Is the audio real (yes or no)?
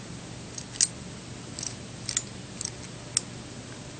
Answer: yes